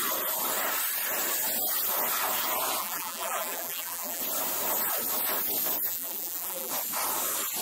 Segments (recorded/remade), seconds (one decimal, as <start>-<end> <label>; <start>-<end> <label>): 0.0-2.8 recorded; 2.8-4.2 remade; 4.2-5.8 recorded; 5.8-6.7 remade; 6.7-7.6 recorded